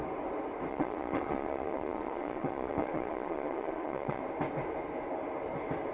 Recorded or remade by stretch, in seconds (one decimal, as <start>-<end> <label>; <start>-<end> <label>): 0.0-0.7 recorded; 0.7-4.2 remade; 4.2-5.9 recorded